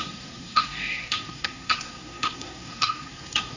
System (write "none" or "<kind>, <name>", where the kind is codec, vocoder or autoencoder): codec, SNAC